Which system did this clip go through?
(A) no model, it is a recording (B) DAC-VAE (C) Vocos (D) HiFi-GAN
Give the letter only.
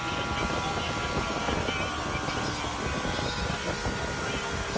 A